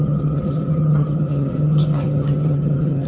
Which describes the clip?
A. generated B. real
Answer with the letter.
A